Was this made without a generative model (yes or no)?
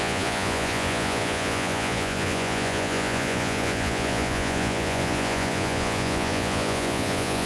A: no